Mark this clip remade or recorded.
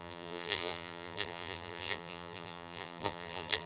remade